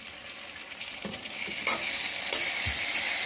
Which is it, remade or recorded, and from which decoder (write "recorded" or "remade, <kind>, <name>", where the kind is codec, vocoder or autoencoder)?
recorded